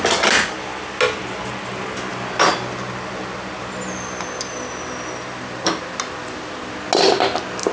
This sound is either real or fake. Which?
real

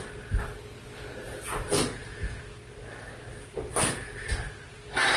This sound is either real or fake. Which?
real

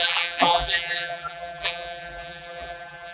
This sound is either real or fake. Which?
fake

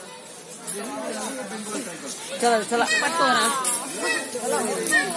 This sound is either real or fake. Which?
real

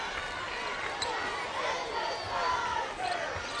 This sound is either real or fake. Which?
real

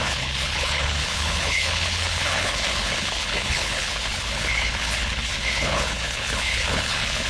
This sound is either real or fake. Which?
fake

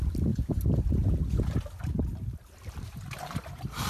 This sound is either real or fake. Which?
real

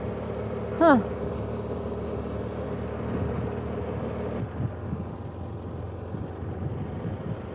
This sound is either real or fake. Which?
real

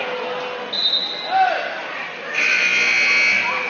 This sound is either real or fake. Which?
real